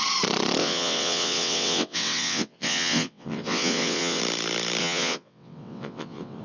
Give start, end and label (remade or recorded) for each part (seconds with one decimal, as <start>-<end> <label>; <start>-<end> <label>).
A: 0.0-0.6 recorded; 0.6-4.2 remade; 4.2-4.8 recorded; 4.8-6.4 remade